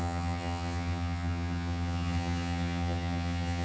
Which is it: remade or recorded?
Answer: remade